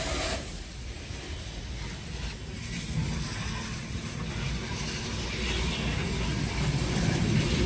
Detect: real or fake real